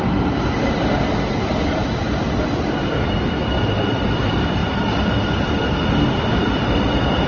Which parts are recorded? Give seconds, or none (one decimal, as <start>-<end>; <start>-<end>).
4.6-5.3